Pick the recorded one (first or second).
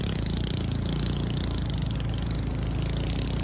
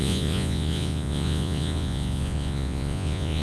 first